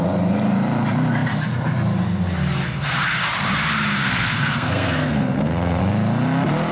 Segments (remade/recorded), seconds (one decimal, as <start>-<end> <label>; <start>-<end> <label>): 0.0-4.0 recorded; 4.0-5.8 remade; 5.8-6.7 recorded